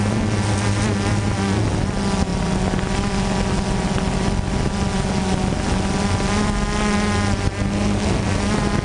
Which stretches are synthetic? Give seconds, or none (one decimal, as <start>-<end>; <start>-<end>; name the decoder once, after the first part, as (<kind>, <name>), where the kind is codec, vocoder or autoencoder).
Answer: none